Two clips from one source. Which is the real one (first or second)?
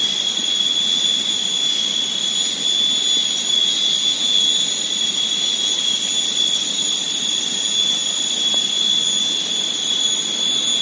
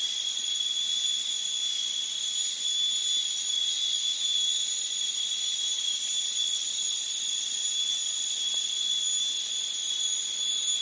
first